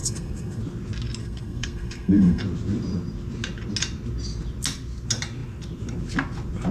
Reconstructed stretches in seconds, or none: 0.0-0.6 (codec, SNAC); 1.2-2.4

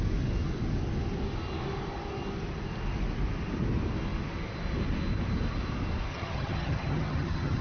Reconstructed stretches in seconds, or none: 6.1-7.6 (vocoder, HiFi-GAN)

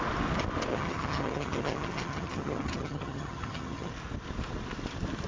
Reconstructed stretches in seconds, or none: 0.7-3.9 (vocoder, HiFi-GAN)

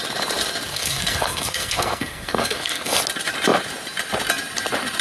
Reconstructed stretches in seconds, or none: 0.7-3.0 (codec, SNAC)

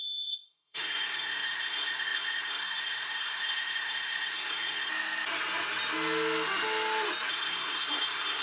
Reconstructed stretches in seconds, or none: 0.0-4.9 (codec, SNAC); 7.3-8.4

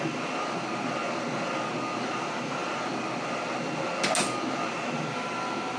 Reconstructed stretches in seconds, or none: none

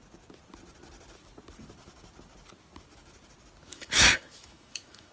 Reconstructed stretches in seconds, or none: 3.7-5.1 (autoencoder, DAC-VAE)

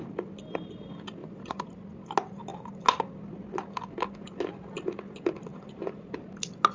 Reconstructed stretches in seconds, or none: 1.2-1.8 (vocoder, BigVGAN v2); 5.5-6.1